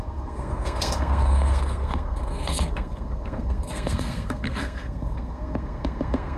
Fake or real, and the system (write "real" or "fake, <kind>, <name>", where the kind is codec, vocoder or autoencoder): fake, codec, SNAC